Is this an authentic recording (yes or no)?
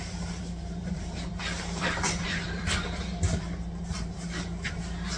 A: no